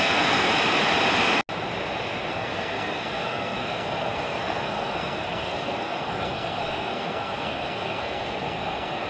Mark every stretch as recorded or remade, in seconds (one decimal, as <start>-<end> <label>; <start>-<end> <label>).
0.0-0.5 remade; 0.5-2.3 recorded; 2.3-9.1 remade